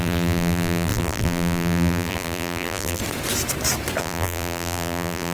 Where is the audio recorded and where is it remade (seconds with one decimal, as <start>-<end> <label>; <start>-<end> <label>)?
0.0-3.0 remade; 3.0-4.0 recorded; 4.0-5.3 remade